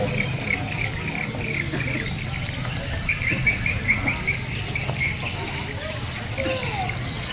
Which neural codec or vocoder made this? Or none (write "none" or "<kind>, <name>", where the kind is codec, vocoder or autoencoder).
none